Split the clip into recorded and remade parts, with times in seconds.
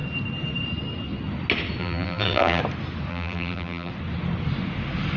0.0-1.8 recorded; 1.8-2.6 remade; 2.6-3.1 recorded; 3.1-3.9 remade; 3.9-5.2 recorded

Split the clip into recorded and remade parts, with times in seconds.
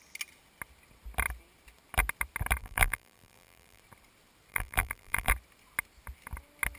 0.0-2.6 recorded; 2.6-3.8 remade; 3.8-4.5 recorded; 4.5-5.3 remade; 5.3-6.8 recorded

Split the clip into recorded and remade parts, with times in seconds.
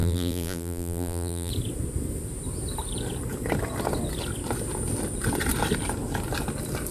0.0-1.5 remade; 1.5-6.9 recorded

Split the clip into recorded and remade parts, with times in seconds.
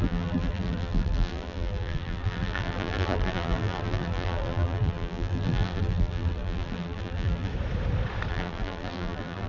0.0-7.5 remade; 7.5-8.3 recorded; 8.3-9.5 remade